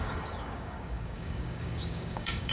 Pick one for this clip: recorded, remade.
remade